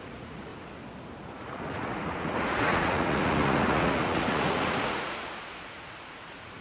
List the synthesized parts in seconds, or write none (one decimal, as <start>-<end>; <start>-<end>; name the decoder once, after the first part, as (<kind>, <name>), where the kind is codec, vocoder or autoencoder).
0.0-0.5 (vocoder, Vocos); 1.3-6.6